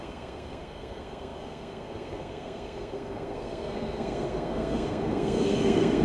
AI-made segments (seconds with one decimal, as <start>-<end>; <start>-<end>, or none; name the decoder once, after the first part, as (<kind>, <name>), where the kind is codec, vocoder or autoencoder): 0.0-6.0 (codec, SNAC)